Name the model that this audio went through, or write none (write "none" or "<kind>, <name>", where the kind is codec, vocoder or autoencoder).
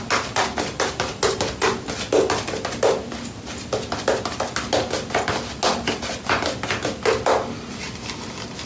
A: none